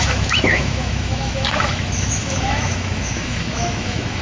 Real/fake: fake